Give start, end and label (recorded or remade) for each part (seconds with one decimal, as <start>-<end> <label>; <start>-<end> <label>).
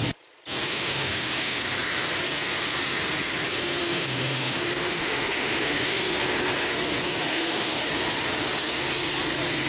0.0-0.7 recorded; 0.7-1.6 remade; 1.6-3.8 recorded; 3.8-6.2 remade; 6.2-7.3 recorded; 7.3-7.9 remade; 7.9-9.7 recorded